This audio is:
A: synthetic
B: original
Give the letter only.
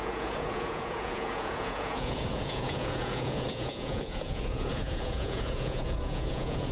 A